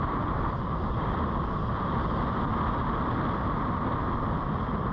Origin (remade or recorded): recorded